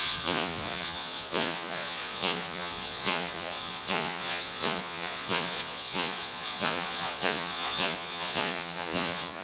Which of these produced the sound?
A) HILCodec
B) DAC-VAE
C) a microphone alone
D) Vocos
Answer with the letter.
D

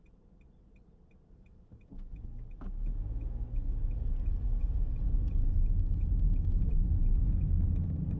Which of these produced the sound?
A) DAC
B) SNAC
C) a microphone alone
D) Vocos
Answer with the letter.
C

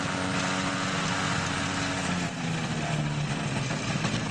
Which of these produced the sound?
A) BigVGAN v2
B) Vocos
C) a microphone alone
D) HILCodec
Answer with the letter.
C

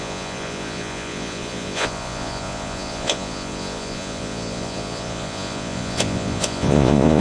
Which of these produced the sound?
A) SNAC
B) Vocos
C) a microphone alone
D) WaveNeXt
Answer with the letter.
B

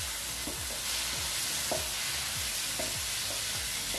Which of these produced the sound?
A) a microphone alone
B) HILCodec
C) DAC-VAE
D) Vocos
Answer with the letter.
A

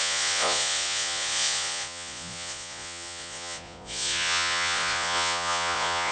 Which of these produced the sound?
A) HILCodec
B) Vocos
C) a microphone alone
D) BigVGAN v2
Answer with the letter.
B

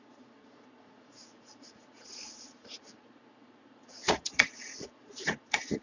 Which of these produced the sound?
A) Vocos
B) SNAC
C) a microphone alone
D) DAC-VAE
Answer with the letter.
A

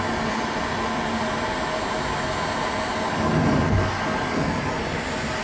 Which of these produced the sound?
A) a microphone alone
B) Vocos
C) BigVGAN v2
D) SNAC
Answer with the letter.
A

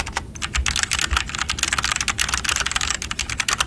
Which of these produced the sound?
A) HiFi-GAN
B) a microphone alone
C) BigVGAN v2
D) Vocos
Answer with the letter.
B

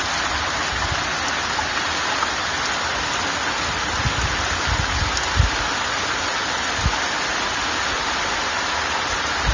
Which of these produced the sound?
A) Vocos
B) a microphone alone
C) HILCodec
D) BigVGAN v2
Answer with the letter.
B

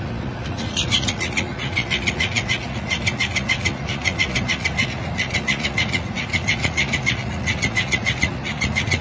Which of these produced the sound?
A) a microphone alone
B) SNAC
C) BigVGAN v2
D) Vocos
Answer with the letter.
D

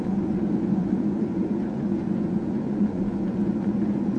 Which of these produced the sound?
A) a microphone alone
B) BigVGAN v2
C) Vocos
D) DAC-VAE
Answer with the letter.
C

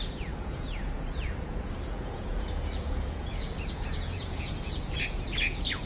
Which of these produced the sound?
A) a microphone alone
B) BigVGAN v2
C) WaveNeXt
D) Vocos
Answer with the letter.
D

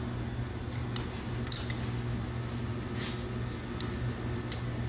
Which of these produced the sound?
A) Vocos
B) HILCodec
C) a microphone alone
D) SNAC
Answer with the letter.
C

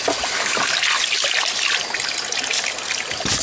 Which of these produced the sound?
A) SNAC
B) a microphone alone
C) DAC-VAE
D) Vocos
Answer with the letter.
B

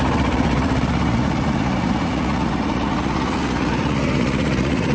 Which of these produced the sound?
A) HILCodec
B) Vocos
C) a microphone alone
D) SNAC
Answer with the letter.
B